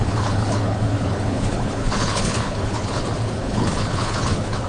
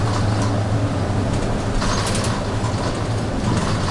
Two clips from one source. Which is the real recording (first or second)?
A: second